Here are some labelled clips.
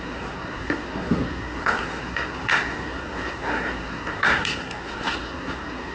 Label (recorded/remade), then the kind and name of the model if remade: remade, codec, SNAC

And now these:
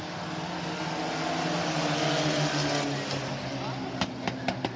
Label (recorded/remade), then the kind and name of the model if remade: recorded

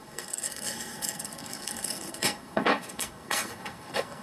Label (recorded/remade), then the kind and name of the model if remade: remade, codec, SNAC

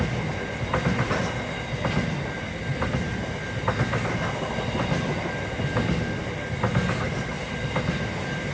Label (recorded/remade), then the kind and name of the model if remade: recorded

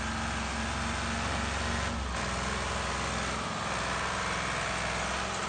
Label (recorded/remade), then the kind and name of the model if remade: recorded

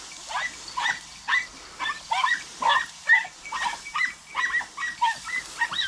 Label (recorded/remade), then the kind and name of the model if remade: recorded